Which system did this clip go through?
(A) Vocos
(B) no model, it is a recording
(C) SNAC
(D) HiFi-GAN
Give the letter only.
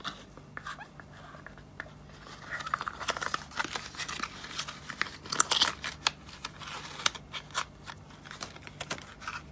B